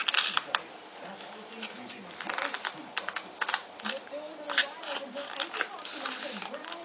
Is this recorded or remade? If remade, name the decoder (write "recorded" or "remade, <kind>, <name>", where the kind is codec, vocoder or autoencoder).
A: recorded